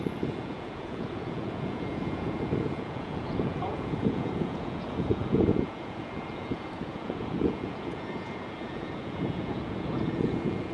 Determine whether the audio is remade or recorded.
remade